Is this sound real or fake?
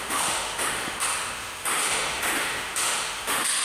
fake